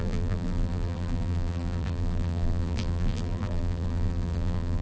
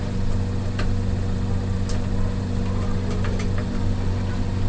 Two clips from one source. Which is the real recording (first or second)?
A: second